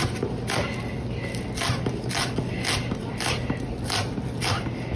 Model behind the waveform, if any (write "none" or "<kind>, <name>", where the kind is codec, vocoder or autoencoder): none